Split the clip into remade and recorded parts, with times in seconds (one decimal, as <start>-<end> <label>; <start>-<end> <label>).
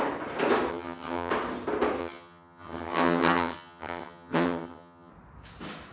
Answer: 0.0-0.7 recorded; 0.7-1.3 remade; 1.3-2.0 recorded; 2.0-5.1 remade; 5.1-5.9 recorded